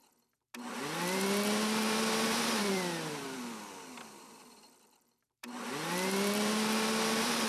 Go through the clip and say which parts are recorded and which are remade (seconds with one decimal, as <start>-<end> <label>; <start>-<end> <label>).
0.0-0.7 recorded; 0.7-7.5 remade